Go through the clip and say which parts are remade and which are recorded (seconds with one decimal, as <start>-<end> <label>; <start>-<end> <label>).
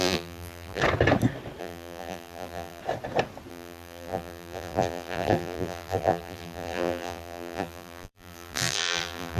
0.0-0.8 remade; 0.8-1.6 recorded; 1.6-2.8 remade; 2.8-3.5 recorded; 3.5-9.4 remade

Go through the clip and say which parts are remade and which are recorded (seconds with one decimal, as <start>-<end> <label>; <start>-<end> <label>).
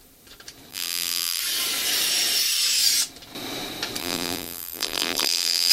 0.0-0.7 recorded; 0.7-1.4 remade; 1.4-4.0 recorded; 4.0-5.7 remade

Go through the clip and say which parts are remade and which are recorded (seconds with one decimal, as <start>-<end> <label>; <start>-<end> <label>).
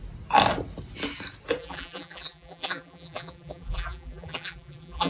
0.0-1.6 recorded; 1.6-5.1 remade